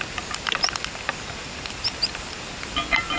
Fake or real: real